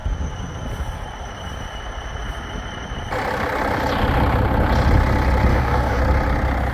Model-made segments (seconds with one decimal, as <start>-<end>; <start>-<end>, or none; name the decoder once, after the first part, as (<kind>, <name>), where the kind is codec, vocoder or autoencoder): 5.5-6.0 (codec, DAC)